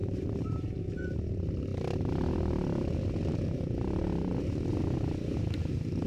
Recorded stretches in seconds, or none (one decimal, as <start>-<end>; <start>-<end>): 0.7-6.1